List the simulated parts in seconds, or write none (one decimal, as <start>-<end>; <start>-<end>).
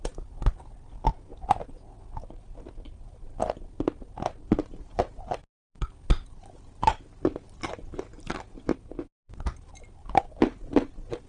none